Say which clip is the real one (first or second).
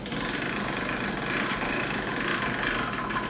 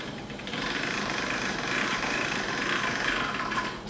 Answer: first